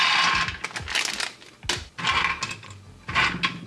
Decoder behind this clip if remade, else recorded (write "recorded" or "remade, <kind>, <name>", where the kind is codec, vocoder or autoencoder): recorded